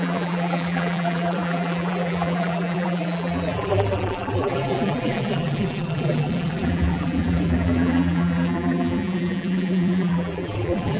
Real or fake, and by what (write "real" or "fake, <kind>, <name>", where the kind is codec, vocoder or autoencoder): fake, vocoder, BigVGAN v2